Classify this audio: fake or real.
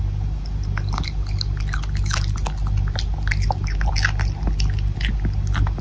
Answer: real